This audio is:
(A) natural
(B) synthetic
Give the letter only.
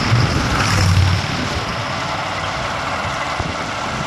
A